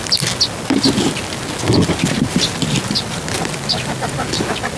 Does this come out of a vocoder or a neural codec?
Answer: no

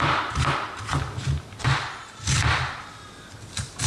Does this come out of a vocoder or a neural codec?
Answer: no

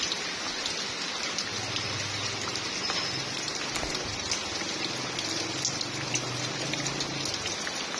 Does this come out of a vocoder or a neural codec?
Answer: no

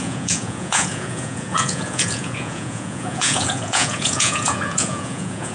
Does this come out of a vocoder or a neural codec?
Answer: yes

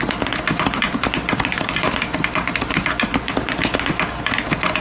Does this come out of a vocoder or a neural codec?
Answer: no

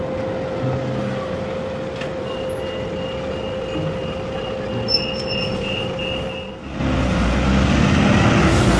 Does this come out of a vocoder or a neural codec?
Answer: no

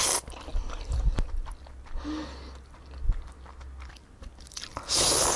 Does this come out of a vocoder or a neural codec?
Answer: no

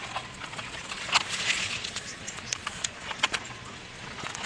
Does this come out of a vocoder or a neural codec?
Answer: yes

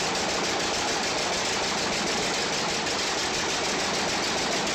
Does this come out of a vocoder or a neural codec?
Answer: no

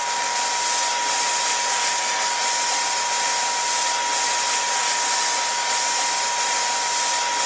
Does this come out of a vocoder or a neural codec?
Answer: no